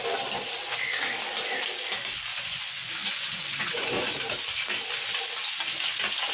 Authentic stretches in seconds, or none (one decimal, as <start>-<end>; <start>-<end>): 0.0-2.3; 4.1-6.3